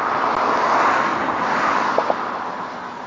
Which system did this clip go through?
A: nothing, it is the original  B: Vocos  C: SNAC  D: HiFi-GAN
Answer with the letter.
A